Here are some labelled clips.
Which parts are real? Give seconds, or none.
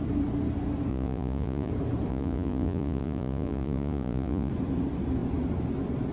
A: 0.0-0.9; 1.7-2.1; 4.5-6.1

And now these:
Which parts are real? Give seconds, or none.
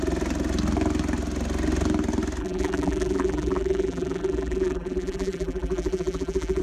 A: 0.0-2.4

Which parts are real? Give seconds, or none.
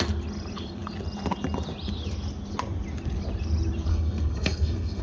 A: 0.0-3.9